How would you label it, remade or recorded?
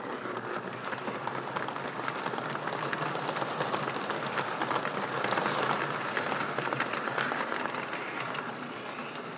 recorded